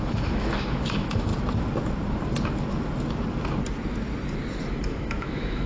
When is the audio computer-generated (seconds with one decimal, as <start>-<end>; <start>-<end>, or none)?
0.0-1.3; 4.7-5.7